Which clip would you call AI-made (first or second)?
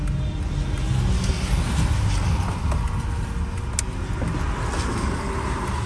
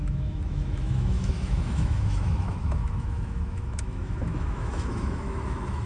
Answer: second